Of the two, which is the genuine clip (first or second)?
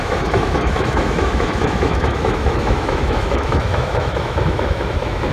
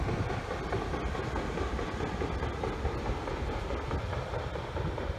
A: second